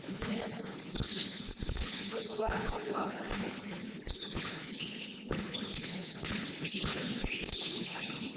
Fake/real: fake